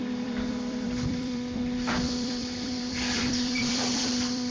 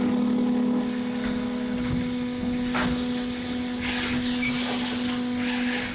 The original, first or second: second